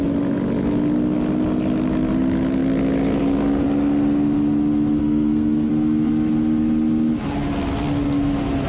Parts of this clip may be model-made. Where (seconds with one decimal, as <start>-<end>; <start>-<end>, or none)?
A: 5.0-5.7